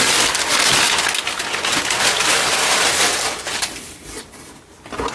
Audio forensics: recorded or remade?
recorded